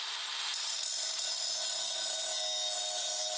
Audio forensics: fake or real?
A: real